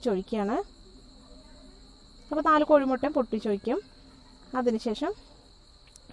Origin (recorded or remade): recorded